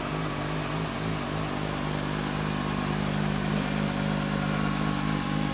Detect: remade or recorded recorded